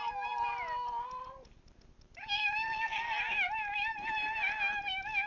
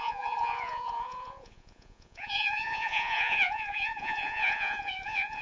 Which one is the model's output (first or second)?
second